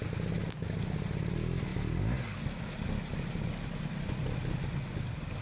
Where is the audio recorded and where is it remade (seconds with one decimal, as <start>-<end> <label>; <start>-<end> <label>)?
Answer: 0.0-5.4 recorded